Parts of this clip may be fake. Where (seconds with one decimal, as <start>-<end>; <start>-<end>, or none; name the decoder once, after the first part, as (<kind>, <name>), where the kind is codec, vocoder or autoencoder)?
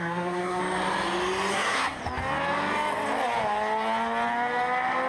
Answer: 0.0-0.6 (codec, SNAC); 1.5-2.0